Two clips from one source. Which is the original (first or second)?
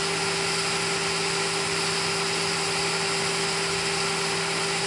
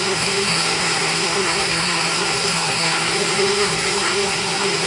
first